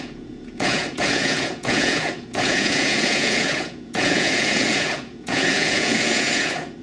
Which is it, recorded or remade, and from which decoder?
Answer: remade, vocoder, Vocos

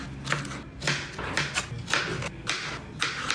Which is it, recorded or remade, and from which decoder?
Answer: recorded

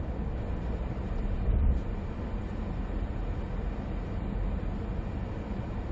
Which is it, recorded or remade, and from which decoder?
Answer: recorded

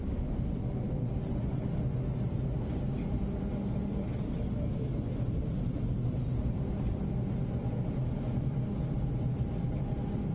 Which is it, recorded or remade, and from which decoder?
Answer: recorded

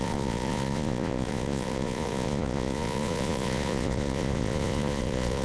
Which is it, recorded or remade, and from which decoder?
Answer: remade, vocoder, Vocos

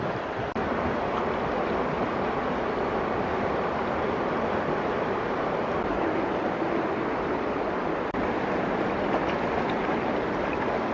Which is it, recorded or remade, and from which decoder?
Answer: recorded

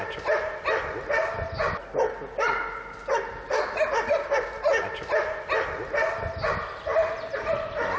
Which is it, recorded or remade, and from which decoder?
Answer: recorded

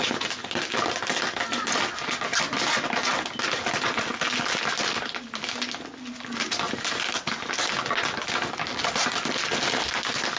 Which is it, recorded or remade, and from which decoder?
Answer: recorded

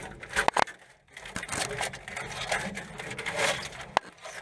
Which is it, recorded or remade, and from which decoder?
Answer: recorded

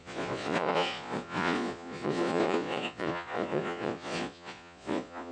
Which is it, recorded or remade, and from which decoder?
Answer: remade, vocoder, Vocos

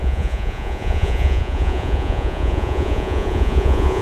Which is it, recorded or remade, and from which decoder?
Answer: remade, vocoder, Vocos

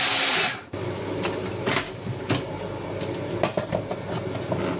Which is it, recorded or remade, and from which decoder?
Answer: recorded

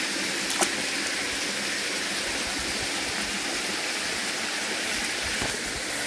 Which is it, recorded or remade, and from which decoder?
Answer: recorded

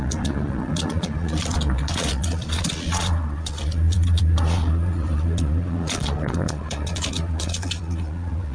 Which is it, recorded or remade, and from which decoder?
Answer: remade, vocoder, Vocos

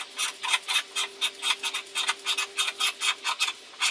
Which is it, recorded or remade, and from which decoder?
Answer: recorded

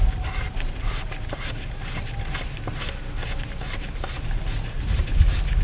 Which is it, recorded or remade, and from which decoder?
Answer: recorded